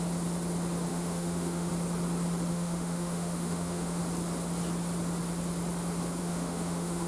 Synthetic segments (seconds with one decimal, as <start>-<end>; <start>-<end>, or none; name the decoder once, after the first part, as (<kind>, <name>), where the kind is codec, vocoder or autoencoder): 0.9-1.7 (autoencoder, DAC-VAE); 2.5-4.0; 6.2-7.1